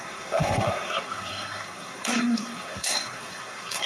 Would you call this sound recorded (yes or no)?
no